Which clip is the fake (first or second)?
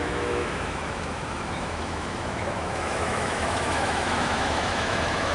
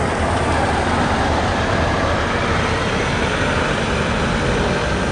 first